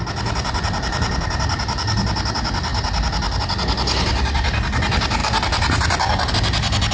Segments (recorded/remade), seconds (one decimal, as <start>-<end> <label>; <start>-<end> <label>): 0.0-6.9 recorded